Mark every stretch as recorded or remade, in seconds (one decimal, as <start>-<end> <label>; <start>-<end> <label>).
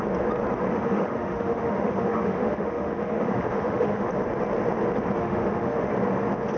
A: 0.0-0.7 recorded; 0.7-4.1 remade; 4.1-5.2 recorded; 5.2-5.9 remade; 5.9-6.6 recorded